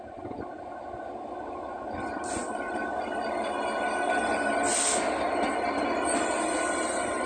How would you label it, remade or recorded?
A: recorded